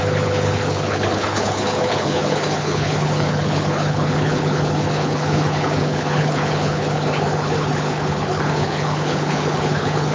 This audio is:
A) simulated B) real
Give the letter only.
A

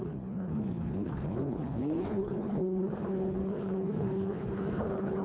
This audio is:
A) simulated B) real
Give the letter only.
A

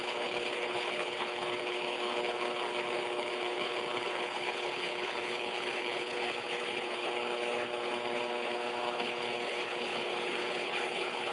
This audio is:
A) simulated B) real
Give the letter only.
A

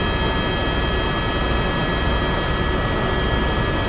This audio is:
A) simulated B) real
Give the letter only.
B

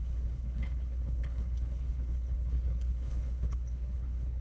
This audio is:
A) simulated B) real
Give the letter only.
A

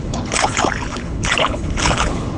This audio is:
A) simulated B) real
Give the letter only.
A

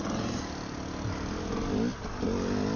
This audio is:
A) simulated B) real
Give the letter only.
B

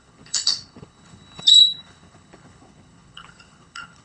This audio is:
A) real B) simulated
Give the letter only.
B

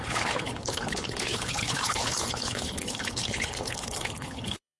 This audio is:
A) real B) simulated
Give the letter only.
B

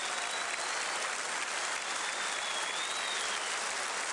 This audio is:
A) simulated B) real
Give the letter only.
B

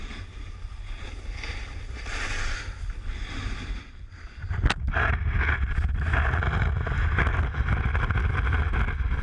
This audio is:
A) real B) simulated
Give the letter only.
A